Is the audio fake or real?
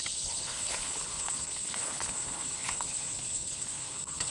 fake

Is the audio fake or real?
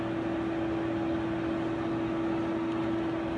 real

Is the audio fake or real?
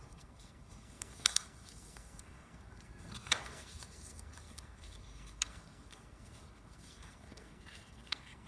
fake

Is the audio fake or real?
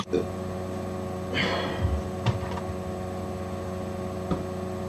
real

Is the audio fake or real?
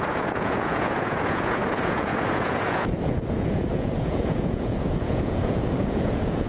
fake